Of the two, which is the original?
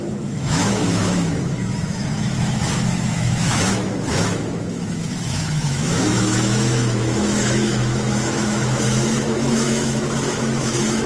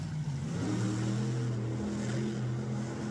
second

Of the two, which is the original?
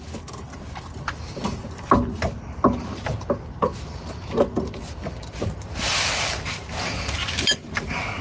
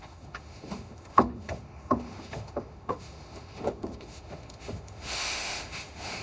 first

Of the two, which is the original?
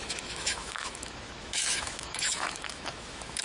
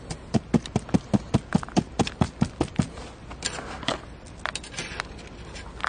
second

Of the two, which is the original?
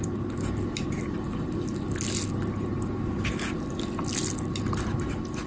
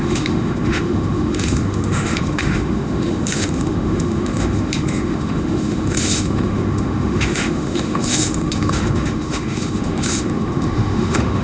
first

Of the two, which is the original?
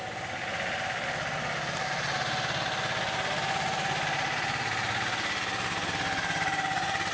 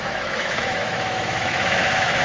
first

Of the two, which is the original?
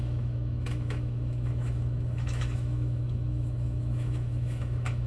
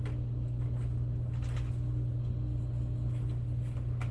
second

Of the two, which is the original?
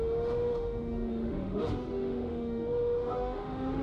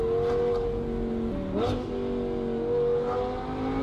second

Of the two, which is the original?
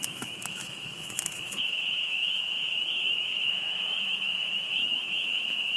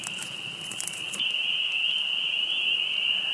second